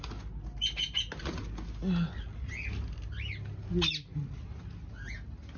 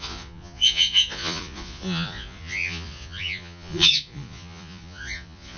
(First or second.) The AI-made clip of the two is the second